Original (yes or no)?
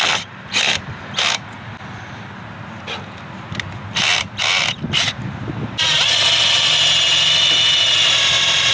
yes